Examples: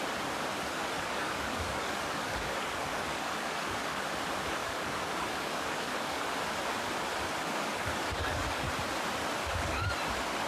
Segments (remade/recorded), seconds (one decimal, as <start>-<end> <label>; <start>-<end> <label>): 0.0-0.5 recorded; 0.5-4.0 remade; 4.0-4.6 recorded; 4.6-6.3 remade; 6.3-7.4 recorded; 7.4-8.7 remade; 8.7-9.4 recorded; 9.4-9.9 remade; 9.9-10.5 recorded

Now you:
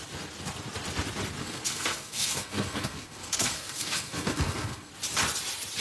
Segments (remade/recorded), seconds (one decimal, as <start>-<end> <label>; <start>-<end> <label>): 0.0-1.4 recorded; 1.4-4.9 remade; 4.9-5.8 recorded

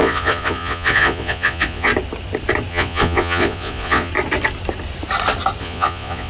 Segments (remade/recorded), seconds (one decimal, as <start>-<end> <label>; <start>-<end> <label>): 0.0-1.9 remade; 1.9-2.7 recorded; 2.7-4.1 remade; 4.1-5.6 recorded; 5.6-6.3 remade

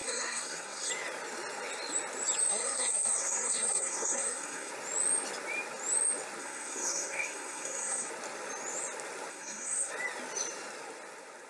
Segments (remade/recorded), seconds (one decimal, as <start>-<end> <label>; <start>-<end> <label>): 0.0-0.9 remade; 0.9-2.5 recorded; 2.5-4.7 remade; 4.7-6.4 recorded; 6.4-8.1 remade; 8.1-9.3 recorded; 9.3-9.9 remade; 9.9-11.5 recorded